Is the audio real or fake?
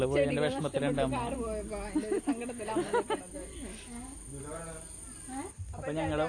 real